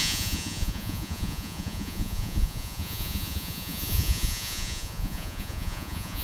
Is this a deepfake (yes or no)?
yes